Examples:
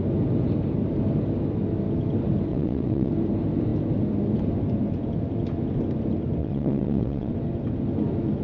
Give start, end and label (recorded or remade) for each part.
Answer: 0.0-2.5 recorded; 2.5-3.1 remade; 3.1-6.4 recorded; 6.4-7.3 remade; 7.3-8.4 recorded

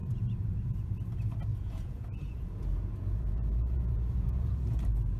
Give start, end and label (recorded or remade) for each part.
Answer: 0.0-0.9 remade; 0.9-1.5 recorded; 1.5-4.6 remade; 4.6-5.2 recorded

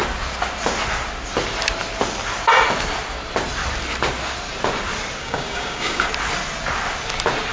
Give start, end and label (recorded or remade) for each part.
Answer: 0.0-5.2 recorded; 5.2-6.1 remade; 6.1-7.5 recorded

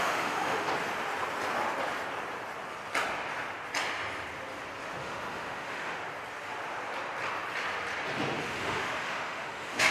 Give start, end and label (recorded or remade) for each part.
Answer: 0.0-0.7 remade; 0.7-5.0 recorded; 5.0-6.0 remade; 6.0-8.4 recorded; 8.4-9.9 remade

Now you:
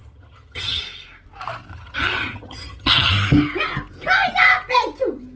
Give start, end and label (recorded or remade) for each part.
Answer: 0.0-0.8 remade; 0.8-1.7 recorded; 1.7-3.1 remade; 3.1-5.4 recorded

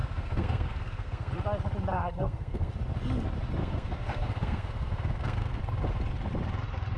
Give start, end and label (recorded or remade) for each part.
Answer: 0.0-1.3 remade; 1.3-1.9 recorded; 1.9-2.7 remade; 2.7-3.6 recorded; 3.6-5.6 remade; 5.6-7.0 recorded